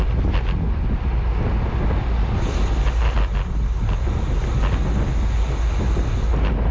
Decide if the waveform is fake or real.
real